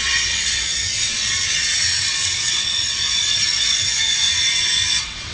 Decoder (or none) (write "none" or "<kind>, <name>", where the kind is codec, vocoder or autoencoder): vocoder, WaveNeXt